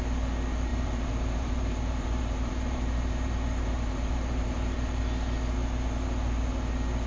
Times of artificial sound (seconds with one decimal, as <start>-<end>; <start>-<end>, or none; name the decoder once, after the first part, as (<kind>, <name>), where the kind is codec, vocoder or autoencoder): 0.7-5.0 (vocoder, BigVGAN v2)